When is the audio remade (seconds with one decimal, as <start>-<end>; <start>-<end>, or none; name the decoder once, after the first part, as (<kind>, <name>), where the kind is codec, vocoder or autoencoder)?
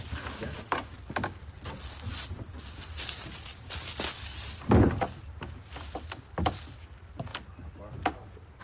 0.4-1.0 (autoencoder, DAC-VAE)